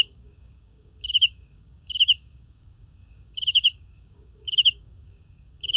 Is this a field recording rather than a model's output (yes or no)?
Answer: no